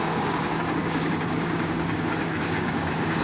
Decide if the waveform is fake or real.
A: fake